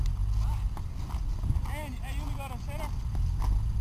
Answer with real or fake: real